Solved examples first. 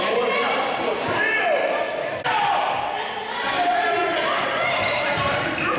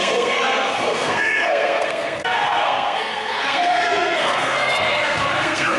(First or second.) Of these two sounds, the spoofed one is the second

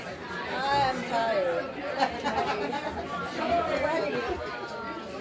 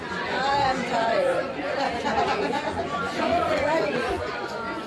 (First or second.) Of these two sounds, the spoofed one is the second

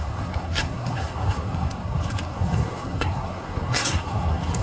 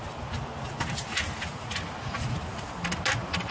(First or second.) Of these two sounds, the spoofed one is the first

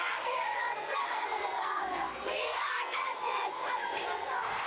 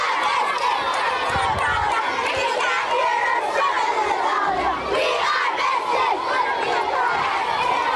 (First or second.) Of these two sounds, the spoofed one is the first